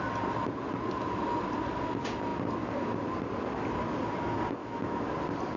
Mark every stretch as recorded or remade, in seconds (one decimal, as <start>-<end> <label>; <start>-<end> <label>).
0.0-4.6 recorded; 4.6-5.1 remade; 5.1-5.6 recorded